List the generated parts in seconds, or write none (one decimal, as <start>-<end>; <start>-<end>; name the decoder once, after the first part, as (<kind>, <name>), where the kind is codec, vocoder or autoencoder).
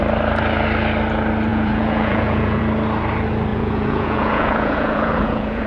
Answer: 1.5-2.6 (vocoder, Vocos); 3.5-5.7